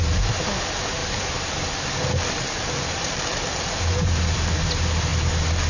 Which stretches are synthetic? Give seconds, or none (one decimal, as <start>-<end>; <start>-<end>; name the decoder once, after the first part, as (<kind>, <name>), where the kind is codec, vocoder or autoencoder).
none